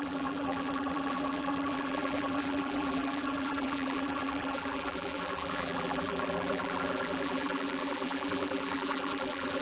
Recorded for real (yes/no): no